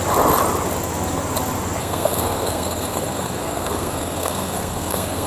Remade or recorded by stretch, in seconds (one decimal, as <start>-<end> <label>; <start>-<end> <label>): 0.0-1.8 recorded; 1.8-5.3 remade